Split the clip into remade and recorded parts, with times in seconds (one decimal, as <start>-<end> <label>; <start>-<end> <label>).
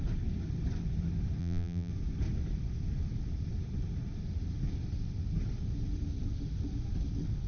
0.0-1.4 recorded; 1.4-1.9 remade; 1.9-7.5 recorded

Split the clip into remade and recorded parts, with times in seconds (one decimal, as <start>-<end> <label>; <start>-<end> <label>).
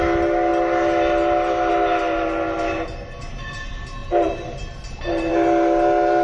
0.0-4.0 recorded; 4.0-5.3 remade; 5.3-6.2 recorded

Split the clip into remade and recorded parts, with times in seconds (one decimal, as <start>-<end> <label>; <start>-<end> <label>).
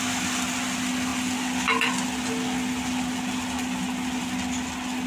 0.0-5.1 recorded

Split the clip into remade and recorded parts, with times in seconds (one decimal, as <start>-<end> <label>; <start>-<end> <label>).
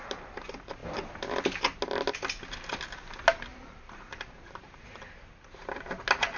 0.0-3.5 recorded; 3.5-5.0 remade; 5.0-6.4 recorded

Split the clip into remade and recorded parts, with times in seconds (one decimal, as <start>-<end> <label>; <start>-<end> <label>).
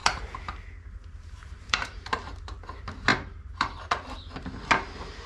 0.0-0.5 remade; 0.5-1.0 recorded; 1.0-2.1 remade; 2.1-3.1 recorded; 3.1-4.0 remade; 4.0-5.3 recorded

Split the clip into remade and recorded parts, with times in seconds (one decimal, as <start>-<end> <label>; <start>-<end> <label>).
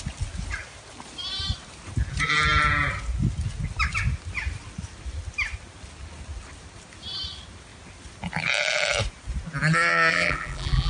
0.0-10.1 recorded; 10.1-10.9 remade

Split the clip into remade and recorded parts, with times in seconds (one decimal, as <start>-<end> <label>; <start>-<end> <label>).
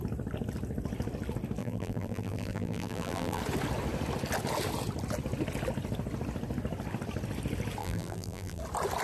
0.0-1.6 recorded; 1.6-3.4 remade; 3.4-7.8 recorded; 7.8-8.6 remade; 8.6-9.0 recorded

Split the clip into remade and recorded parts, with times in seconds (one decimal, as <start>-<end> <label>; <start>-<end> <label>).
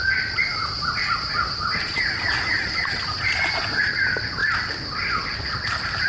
0.0-6.1 recorded